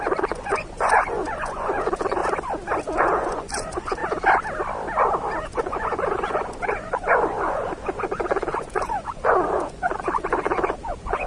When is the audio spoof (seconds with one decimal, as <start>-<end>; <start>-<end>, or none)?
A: 0.0-2.2; 2.8-4.0; 5.4-11.3